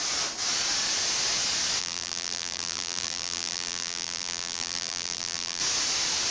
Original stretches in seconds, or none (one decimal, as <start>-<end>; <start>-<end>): 0.0-1.8; 5.6-6.3